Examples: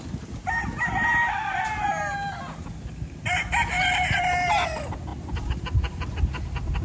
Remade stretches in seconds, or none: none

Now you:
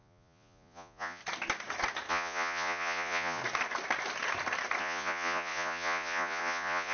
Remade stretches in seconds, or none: 0.0-1.2; 2.1-3.4; 4.8-6.9

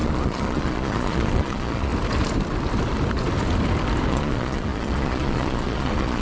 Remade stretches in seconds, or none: 0.0-1.9; 4.1-6.2

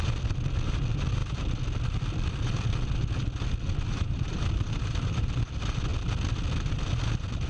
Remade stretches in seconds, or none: 3.9-5.4

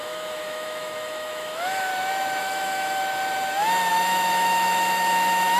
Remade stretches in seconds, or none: 0.0-1.9; 2.4-3.0; 3.9-5.6

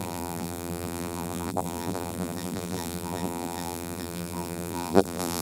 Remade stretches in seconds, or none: 0.0-5.4

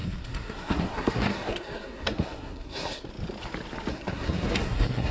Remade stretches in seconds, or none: 0.0-3.1; 3.9-5.1

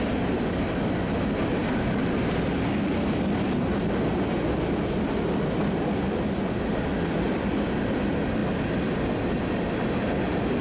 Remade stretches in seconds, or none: none